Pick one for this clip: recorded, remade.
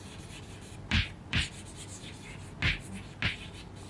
recorded